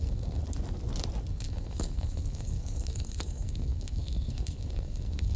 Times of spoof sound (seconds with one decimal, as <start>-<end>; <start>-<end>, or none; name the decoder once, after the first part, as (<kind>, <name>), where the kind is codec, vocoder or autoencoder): 0.0-0.4 (codec, SNAC); 1.3-5.4